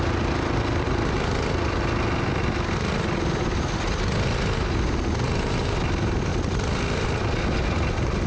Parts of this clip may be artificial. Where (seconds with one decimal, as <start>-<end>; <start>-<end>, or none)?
none